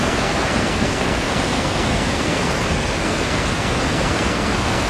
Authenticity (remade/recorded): remade